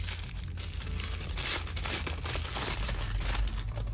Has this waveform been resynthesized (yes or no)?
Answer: no